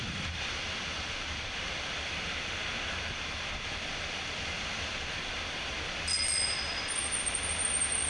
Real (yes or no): no